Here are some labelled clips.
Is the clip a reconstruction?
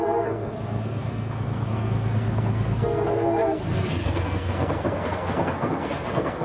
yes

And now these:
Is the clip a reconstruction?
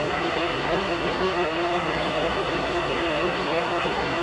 yes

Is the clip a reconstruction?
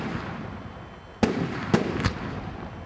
no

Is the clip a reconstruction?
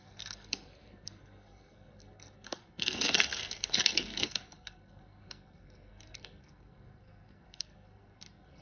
yes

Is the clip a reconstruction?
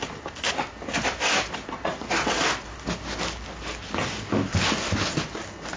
no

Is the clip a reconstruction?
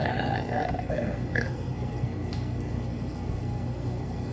yes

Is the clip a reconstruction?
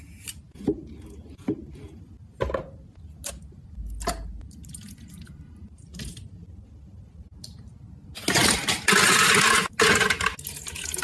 no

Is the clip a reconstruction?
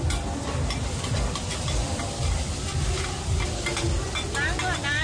no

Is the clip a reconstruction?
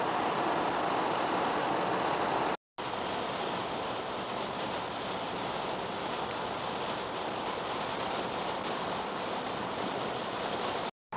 no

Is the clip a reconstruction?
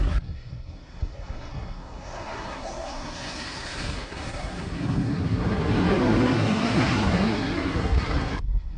yes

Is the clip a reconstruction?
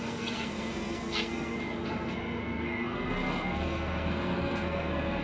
yes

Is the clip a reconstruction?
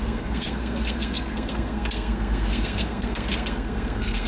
yes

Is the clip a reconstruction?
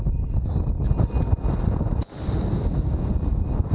no